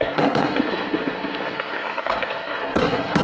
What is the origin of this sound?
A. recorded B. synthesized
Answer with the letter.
B